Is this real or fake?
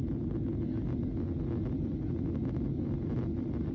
real